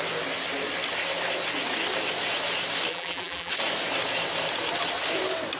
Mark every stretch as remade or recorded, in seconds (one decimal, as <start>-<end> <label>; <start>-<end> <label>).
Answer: 0.0-2.9 recorded; 2.9-3.5 remade; 3.5-5.6 recorded